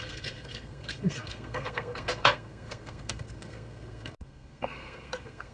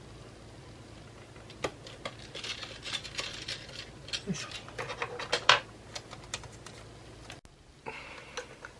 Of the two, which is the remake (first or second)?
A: first